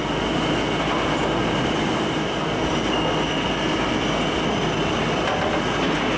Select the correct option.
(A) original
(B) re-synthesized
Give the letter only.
A